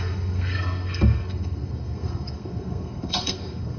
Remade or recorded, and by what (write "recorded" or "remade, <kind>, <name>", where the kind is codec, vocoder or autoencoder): remade, codec, SNAC